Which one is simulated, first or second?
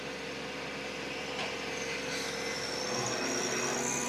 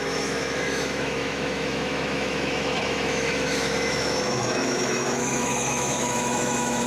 second